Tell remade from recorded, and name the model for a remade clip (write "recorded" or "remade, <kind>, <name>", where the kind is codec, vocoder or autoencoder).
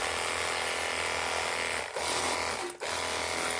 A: recorded